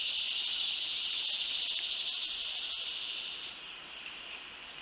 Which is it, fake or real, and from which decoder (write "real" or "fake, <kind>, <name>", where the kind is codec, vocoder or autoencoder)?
real